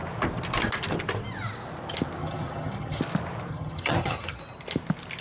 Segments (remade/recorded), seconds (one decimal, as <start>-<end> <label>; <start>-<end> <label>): 0.0-2.2 recorded; 2.2-3.0 remade; 3.0-3.5 recorded; 3.5-4.4 remade; 4.4-5.2 recorded